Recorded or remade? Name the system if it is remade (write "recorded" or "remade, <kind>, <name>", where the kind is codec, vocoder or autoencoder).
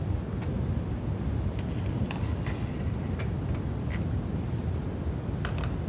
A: recorded